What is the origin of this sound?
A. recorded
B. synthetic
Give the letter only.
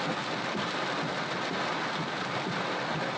A